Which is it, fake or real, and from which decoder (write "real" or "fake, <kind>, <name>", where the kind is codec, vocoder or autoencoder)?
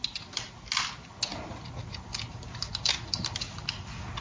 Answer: real